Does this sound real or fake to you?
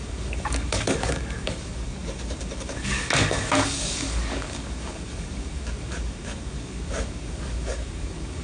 fake